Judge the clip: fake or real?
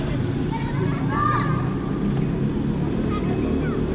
real